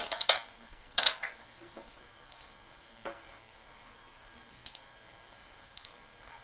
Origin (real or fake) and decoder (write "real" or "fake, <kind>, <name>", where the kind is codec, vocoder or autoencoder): fake, codec, SNAC